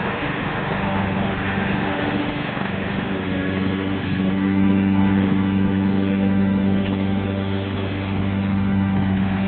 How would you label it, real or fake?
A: fake